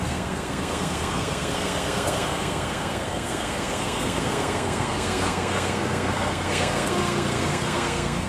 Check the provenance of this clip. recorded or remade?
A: remade